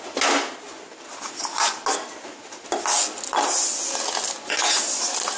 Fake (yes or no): no